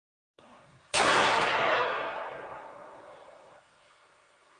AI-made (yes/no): yes